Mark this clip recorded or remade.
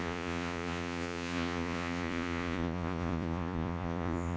remade